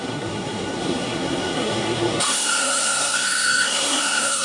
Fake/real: fake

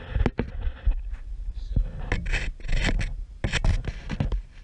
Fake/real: real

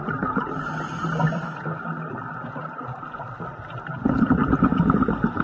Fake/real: real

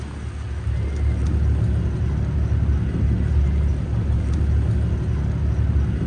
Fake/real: real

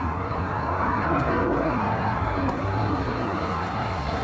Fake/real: fake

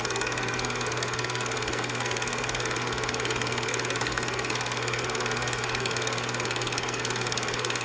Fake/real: fake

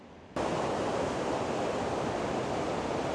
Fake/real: real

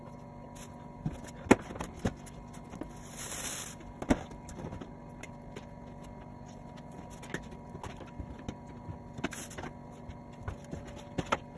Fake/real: real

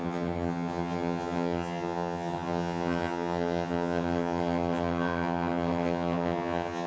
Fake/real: fake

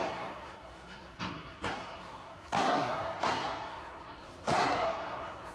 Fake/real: fake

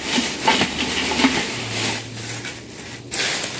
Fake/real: real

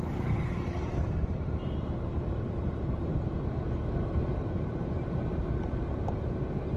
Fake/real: fake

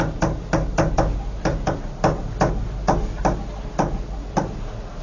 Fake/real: real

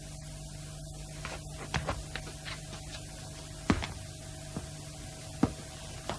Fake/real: real